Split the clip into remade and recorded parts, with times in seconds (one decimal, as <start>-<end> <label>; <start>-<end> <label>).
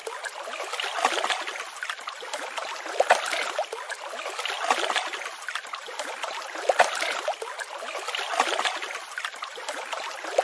0.0-10.4 recorded